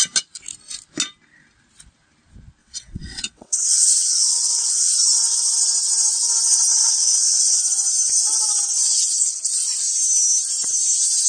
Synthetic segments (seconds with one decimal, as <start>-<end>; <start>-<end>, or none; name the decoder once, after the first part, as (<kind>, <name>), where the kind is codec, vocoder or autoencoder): 2.6-4.9 (vocoder, WaveNeXt); 6.7-7.6